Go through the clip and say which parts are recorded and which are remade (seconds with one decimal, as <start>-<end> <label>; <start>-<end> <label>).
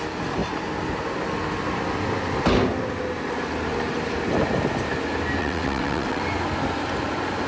0.0-5.4 recorded; 5.4-6.2 remade; 6.2-7.5 recorded